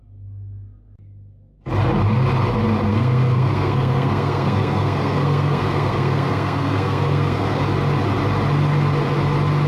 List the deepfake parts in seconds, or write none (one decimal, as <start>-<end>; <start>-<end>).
2.9-7.6